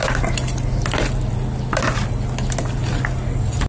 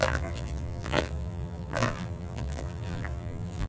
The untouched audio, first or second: first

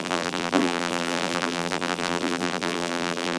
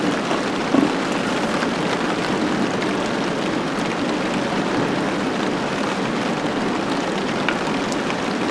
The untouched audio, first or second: second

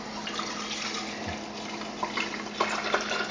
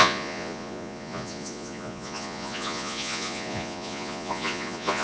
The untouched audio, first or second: first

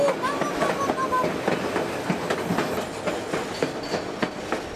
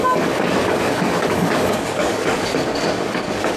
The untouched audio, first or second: first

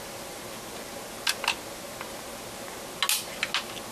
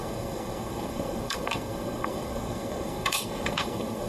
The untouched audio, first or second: first